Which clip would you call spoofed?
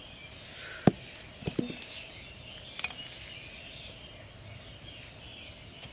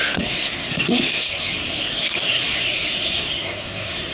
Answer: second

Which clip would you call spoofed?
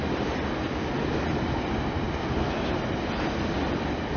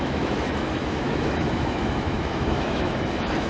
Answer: second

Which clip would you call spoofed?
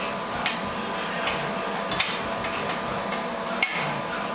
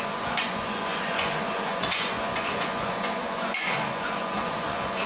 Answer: second